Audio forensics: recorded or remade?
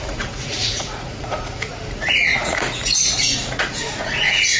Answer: remade